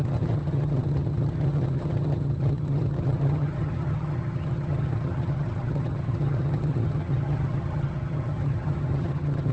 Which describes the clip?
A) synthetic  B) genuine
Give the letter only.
A